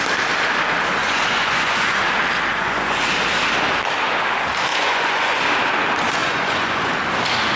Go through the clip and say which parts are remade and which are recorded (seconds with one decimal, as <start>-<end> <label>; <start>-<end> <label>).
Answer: 0.0-1.0 recorded; 1.0-2.0 remade; 2.0-2.5 recorded; 2.5-3.0 remade; 3.0-4.7 recorded; 4.7-5.4 remade; 5.4-6.2 recorded; 6.2-6.9 remade; 6.9-7.6 recorded